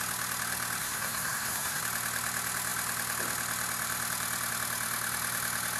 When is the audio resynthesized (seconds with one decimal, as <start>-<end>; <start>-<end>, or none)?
0.8-1.8